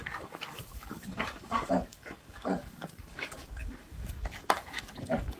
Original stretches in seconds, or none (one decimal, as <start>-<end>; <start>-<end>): none